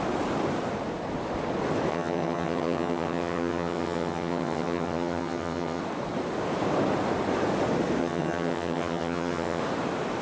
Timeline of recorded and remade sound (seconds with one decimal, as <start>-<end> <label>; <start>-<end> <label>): 0.0-1.9 recorded; 1.9-5.8 remade; 5.8-8.0 recorded; 8.0-9.6 remade; 9.6-10.2 recorded

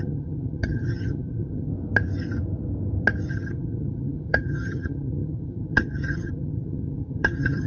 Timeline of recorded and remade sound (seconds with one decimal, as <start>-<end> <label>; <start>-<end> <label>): 0.0-1.7 remade; 1.7-3.3 recorded; 3.3-7.7 remade

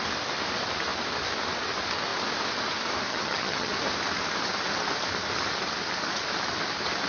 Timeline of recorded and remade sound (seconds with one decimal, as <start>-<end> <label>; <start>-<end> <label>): 0.0-3.1 recorded; 3.1-3.7 remade; 3.7-7.1 recorded

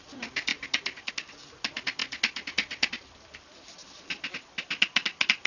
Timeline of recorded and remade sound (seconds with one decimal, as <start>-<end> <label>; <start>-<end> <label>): 0.0-5.5 recorded

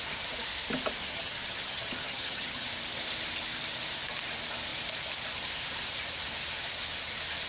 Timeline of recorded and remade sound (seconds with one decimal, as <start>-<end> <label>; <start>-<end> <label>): 0.0-1.0 recorded; 1.0-2.7 remade; 2.7-7.5 recorded

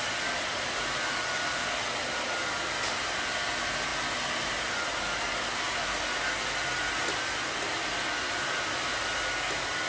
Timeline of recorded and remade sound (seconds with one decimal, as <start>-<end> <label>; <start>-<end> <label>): 0.0-9.9 recorded